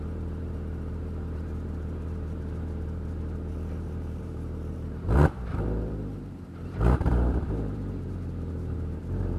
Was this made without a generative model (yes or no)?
no